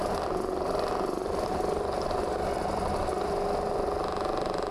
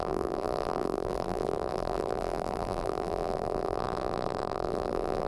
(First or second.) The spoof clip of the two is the second